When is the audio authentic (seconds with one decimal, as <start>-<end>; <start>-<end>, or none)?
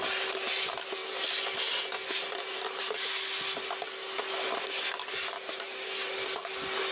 0.0-6.9